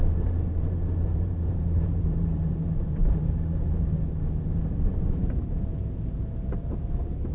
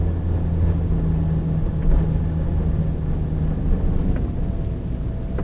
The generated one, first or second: first